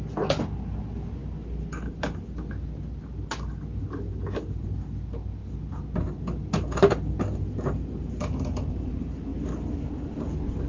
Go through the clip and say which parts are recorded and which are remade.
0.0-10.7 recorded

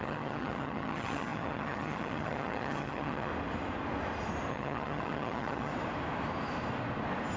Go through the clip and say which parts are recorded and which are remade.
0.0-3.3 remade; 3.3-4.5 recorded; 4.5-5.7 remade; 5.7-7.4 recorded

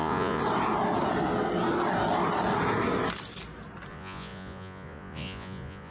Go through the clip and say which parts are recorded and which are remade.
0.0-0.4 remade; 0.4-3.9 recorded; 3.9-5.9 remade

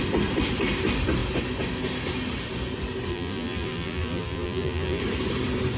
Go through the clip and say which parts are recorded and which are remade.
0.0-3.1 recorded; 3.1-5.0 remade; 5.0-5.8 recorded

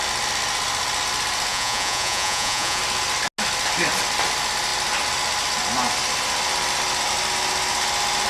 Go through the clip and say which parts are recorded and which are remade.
0.0-1.5 recorded; 1.5-2.8 remade; 2.8-8.3 recorded

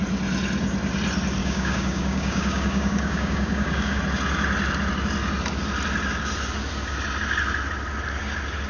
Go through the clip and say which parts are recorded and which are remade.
0.0-1.4 recorded; 1.4-4.0 remade; 4.0-8.7 recorded